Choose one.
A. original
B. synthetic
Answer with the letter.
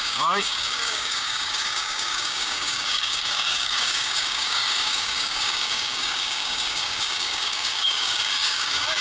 B